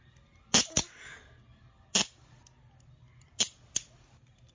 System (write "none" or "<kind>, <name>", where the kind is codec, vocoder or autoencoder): none